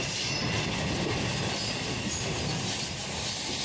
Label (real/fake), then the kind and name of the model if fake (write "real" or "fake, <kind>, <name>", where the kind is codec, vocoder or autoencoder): real